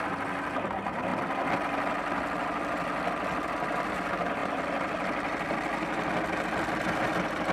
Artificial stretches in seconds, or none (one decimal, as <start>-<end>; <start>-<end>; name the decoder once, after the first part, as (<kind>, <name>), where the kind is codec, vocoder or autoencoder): none

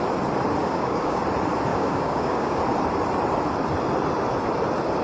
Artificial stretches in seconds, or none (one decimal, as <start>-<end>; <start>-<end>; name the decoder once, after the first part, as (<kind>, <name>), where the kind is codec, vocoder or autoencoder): 0.6-1.2 (codec, DAC); 1.7-2.6

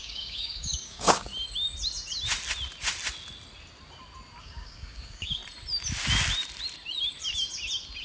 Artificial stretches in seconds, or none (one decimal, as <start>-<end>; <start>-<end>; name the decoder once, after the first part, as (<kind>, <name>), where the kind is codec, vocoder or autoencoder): 0.0-1.3 (codec, DAC); 4.4-5.4

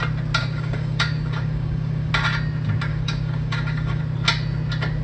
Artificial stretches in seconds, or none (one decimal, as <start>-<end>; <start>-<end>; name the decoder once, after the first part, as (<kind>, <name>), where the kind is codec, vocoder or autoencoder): 0.4-2.1 (codec, DAC); 2.9-4.0